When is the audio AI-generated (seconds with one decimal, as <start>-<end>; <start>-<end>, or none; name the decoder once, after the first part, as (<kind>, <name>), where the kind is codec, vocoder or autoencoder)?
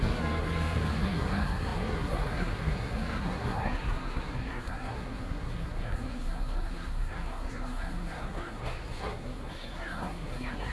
0.0-10.7 (codec, SNAC)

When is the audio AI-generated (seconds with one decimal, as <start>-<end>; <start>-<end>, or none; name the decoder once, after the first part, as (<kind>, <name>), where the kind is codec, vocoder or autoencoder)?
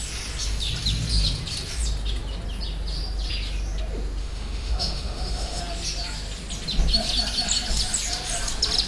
4.2-5.6 (autoencoder, DAC-VAE)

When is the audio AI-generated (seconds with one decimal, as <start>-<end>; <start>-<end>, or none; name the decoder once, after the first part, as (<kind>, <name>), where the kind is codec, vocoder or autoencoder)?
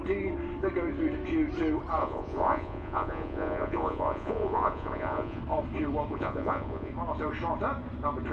2.0-5.4 (vocoder, Vocos); 6.1-6.9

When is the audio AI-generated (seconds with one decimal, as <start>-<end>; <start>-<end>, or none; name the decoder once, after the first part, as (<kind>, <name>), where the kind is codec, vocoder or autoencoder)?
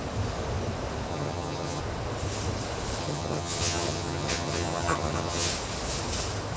1.1-1.8 (vocoder, HiFi-GAN); 3.0-5.5